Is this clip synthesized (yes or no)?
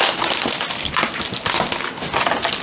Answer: no